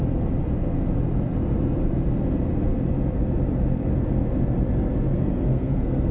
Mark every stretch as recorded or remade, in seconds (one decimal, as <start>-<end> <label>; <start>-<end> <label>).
0.0-5.1 recorded; 5.1-6.1 remade